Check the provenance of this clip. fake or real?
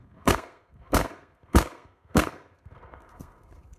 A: fake